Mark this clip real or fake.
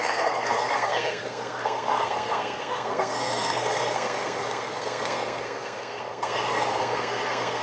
fake